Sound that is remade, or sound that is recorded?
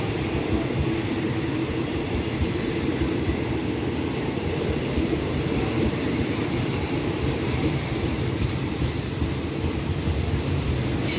remade